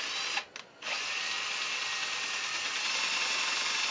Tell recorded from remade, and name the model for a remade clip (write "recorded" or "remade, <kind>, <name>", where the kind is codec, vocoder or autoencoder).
recorded